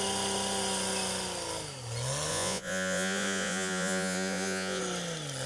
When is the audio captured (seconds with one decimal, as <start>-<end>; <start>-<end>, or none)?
0.0-2.3; 4.8-5.5